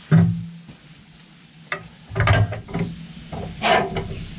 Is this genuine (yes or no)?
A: yes